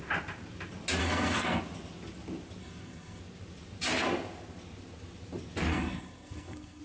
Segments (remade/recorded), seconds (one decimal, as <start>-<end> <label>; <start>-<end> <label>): 0.0-1.0 recorded; 1.0-1.6 remade; 1.6-2.6 recorded; 2.6-3.2 remade; 3.2-5.7 recorded; 5.7-6.8 remade